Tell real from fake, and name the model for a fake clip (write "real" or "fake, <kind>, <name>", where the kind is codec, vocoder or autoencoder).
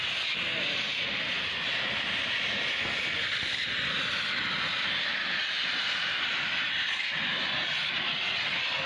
real